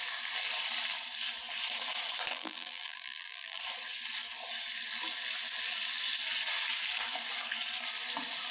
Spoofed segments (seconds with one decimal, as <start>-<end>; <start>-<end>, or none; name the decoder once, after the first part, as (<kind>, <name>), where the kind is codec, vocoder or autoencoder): 2.3-3.6 (vocoder, BigVGAN v2)